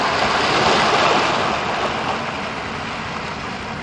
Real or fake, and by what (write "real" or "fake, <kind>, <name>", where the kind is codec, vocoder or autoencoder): real